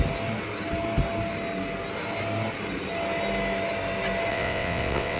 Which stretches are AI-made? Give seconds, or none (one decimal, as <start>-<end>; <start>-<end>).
4.3-5.2